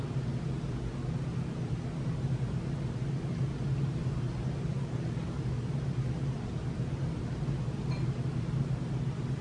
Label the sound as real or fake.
real